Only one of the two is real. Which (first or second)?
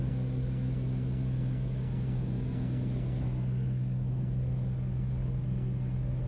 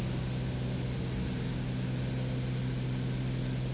second